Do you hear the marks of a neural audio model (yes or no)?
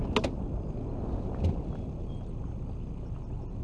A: no